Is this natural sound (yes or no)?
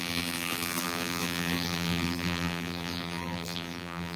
no